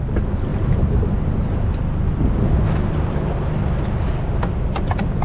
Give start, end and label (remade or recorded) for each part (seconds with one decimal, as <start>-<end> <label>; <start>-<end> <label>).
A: 0.0-5.2 recorded